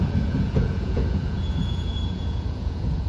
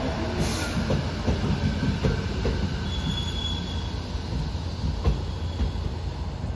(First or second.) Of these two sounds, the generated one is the first